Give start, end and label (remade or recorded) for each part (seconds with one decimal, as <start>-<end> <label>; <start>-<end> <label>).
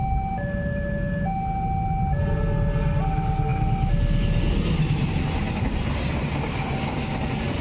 0.0-7.6 recorded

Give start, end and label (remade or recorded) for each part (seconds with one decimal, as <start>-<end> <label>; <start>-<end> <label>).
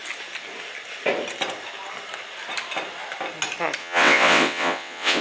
0.0-3.8 recorded; 3.8-5.2 remade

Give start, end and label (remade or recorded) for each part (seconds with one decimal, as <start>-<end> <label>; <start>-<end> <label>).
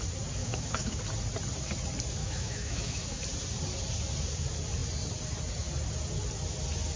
0.0-0.4 recorded; 0.4-1.0 remade; 1.0-2.2 recorded; 2.2-3.2 remade; 3.2-7.0 recorded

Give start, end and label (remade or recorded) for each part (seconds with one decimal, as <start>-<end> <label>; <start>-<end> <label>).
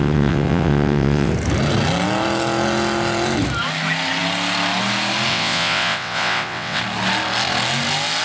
0.0-1.3 remade; 1.3-5.3 recorded; 5.3-6.8 remade; 6.8-8.2 recorded